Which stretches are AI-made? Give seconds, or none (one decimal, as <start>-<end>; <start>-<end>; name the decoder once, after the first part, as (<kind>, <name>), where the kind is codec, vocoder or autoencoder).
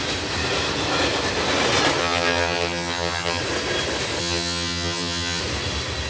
2.0-3.4 (vocoder, HiFi-GAN); 4.2-5.4